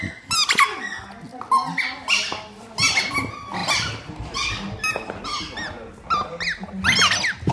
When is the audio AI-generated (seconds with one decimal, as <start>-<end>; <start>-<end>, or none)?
none